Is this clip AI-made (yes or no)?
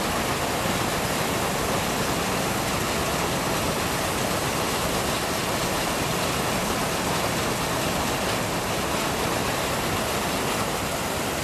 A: no